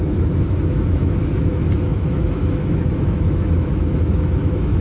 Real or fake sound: fake